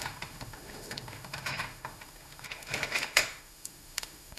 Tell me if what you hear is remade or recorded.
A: remade